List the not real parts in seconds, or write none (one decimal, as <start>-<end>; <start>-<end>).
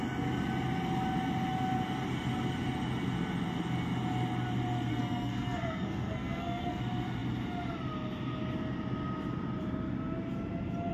4.9-6.8